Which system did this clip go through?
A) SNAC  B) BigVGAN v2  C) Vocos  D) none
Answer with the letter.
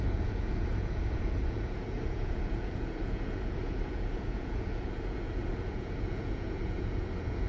C